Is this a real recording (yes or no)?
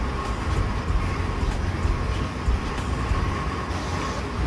yes